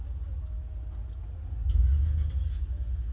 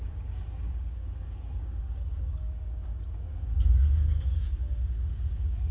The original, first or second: first